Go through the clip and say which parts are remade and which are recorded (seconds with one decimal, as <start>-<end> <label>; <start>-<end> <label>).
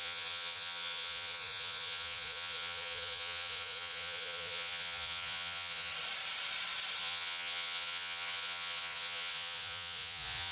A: 0.0-5.9 remade; 5.9-7.0 recorded; 7.0-10.5 remade